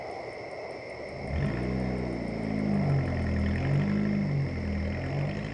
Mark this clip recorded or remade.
recorded